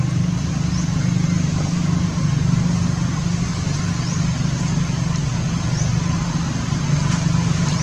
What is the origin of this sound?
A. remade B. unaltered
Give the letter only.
B